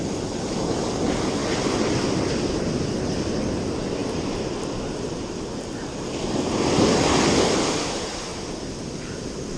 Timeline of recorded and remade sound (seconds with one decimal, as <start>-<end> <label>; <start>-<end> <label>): 0.0-9.6 recorded